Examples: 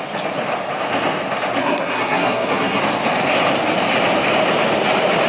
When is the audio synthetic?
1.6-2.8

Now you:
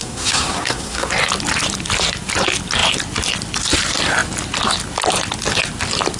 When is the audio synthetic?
0.0-1.1

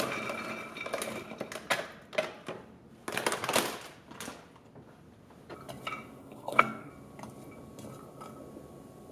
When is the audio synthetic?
6.2-6.9